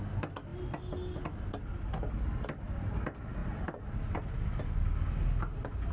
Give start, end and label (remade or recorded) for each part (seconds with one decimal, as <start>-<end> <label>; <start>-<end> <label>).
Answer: 0.0-3.4 recorded; 3.4-4.0 remade; 4.0-5.9 recorded